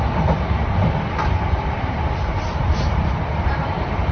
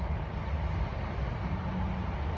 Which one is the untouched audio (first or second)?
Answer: second